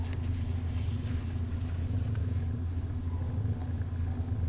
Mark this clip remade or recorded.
recorded